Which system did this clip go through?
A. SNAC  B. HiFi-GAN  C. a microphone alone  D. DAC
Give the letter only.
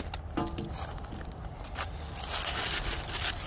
C